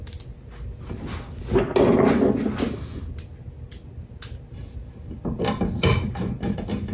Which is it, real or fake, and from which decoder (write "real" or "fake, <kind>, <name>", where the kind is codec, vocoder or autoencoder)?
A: real